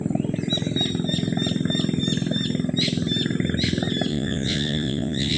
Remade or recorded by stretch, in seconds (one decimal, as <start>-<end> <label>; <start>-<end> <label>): 0.0-4.1 recorded; 4.1-5.4 remade